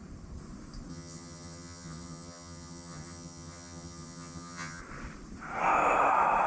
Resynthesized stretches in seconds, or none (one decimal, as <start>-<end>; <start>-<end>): 0.9-4.8